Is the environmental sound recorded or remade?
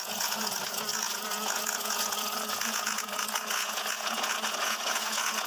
remade